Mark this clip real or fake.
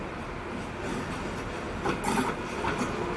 real